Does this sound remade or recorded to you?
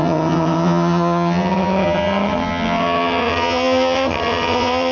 remade